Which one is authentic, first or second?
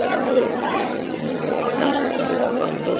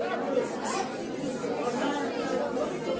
second